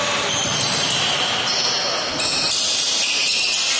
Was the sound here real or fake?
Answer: real